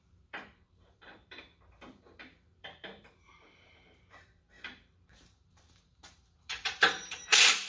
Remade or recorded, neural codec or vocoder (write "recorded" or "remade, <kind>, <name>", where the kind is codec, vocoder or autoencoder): remade, vocoder, BigVGAN v2